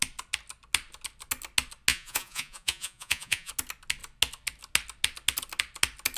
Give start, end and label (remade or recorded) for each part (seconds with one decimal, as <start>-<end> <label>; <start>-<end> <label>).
0.0-1.9 recorded; 1.9-3.5 remade; 3.5-6.2 recorded